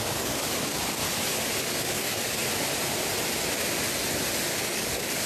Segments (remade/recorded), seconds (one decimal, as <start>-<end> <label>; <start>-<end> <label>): 0.0-1.0 remade; 1.0-1.6 recorded; 1.6-2.4 remade; 2.4-4.5 recorded; 4.5-5.3 remade